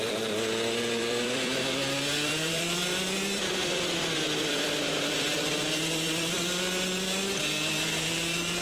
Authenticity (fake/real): fake